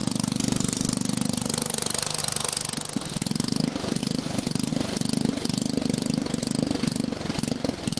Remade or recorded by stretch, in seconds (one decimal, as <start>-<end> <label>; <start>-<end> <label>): 0.0-2.2 remade; 2.2-4.0 recorded; 4.0-4.7 remade; 4.7-8.0 recorded